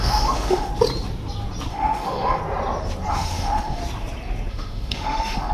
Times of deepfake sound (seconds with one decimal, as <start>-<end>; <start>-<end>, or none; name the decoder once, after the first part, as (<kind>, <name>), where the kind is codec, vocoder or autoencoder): 0.0-0.7 (autoencoder, DAC-VAE); 1.7-2.4; 3.1-3.8; 4.5-5.5